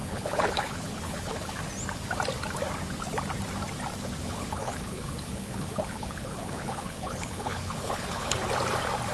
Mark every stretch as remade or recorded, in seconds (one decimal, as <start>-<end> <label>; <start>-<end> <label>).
0.0-1.6 remade; 1.6-4.2 recorded; 4.2-8.5 remade; 8.5-9.1 recorded